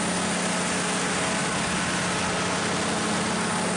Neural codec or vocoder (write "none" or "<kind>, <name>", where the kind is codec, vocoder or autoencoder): none